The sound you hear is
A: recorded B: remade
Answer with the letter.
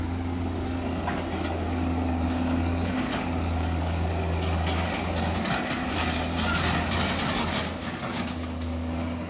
B